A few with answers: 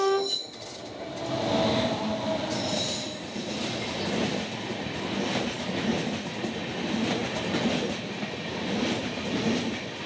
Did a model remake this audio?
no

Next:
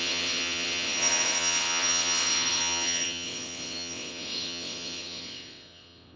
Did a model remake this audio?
yes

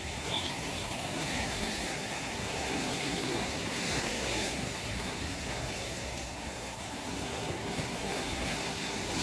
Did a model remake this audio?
yes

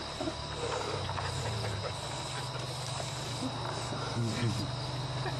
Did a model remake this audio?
no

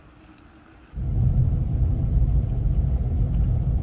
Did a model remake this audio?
no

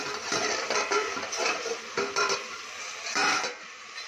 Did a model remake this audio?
yes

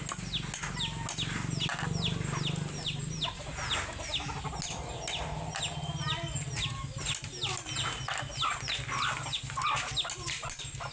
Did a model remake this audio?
no